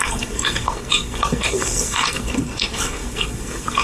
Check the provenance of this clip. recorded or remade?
remade